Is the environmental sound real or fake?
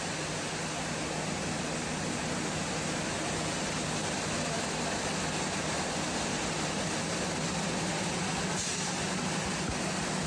real